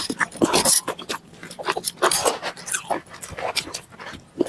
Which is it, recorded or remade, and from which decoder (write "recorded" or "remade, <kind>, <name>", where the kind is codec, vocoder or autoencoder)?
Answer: recorded